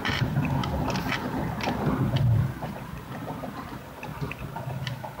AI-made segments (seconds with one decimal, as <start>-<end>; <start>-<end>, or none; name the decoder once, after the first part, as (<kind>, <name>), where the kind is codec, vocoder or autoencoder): 0.0-0.6 (vocoder, BigVGAN v2); 2.7-4.1; 4.7-5.2